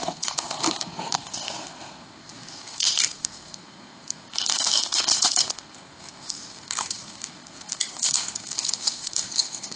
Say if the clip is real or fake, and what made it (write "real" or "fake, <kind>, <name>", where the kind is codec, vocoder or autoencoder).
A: fake, codec, SNAC